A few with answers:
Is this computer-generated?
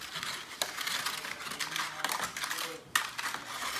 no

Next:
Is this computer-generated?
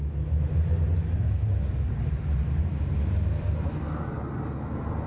no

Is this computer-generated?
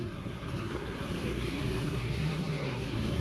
yes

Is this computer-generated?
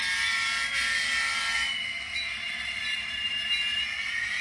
no